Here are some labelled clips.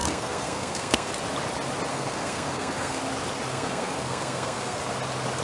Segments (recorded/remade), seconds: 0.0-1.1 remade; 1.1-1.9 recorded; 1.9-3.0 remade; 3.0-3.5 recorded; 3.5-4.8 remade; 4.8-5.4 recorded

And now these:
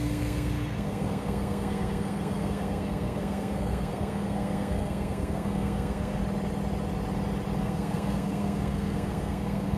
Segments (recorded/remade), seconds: 0.0-6.2 remade; 6.2-7.6 recorded; 7.6-9.8 remade

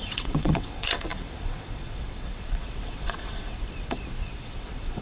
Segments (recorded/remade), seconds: 0.0-5.0 remade

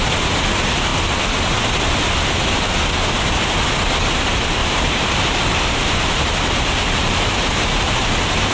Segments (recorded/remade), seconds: 0.0-4.6 recorded; 4.6-8.1 remade; 8.1-8.5 recorded

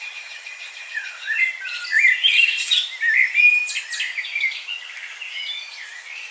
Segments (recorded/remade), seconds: 0.0-1.5 remade; 1.5-2.3 recorded; 2.3-2.8 remade; 2.8-6.3 recorded

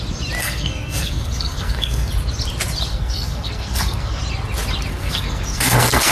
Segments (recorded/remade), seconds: 0.0-0.4 recorded; 0.4-2.1 remade; 2.1-2.9 recorded; 2.9-4.2 remade; 4.2-4.9 recorded; 4.9-6.1 remade